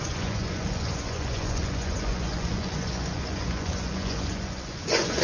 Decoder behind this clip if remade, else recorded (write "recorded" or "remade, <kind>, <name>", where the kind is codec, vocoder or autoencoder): remade, vocoder, Vocos